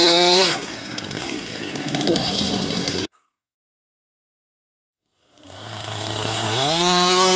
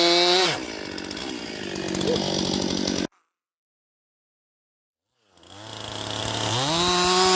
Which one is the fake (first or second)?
first